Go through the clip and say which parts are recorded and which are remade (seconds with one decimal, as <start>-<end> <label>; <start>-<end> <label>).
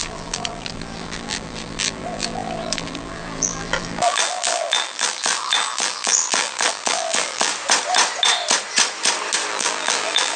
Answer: 0.0-7.5 remade; 7.5-9.5 recorded; 9.5-10.4 remade